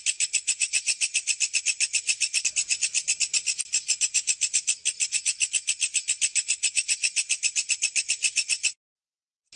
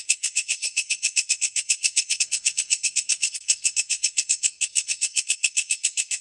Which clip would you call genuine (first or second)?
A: first